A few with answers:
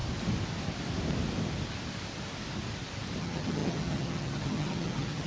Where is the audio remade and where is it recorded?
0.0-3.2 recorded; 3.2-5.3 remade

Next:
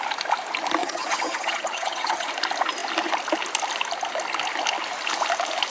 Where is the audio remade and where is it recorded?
0.0-0.8 recorded; 0.8-2.3 remade; 2.3-5.7 recorded

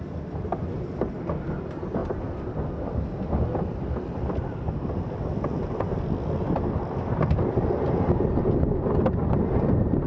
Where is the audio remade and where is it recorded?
0.0-10.1 recorded

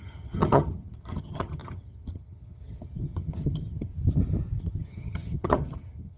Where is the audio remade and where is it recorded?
0.0-3.9 remade; 3.9-4.6 recorded; 4.6-6.2 remade

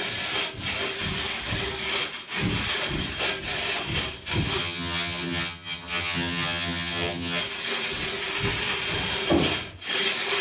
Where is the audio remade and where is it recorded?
0.0-4.6 recorded; 4.6-7.4 remade; 7.4-10.4 recorded